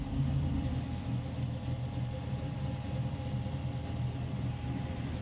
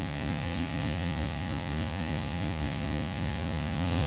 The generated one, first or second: second